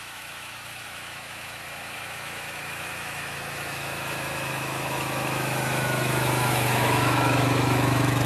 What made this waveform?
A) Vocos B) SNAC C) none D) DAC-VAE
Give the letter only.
D